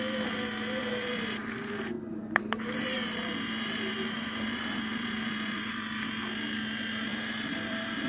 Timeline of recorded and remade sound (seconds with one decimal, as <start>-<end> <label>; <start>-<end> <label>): 0.0-0.8 recorded; 0.8-5.7 remade; 5.7-7.1 recorded; 7.1-8.1 remade